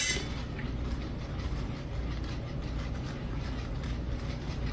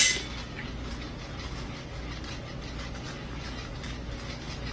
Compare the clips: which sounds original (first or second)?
second